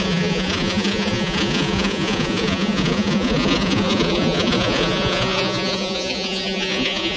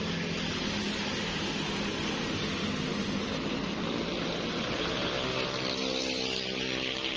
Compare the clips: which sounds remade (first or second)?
first